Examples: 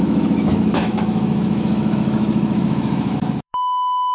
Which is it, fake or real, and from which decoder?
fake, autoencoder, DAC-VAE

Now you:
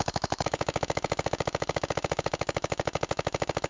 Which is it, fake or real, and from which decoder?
fake, autoencoder, DAC-VAE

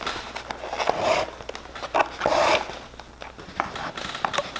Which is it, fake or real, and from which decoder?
real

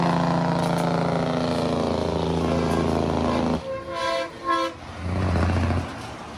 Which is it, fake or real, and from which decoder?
real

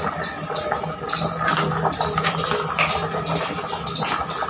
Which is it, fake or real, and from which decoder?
real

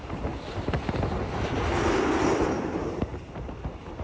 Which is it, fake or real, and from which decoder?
real